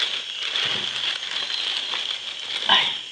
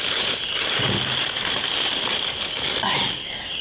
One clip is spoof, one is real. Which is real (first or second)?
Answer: first